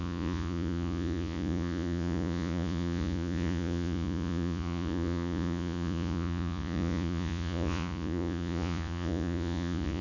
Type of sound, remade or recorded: remade